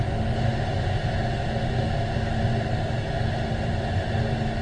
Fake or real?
real